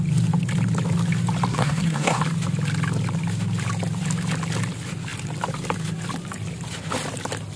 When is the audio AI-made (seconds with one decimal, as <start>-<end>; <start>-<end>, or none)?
1.5-2.2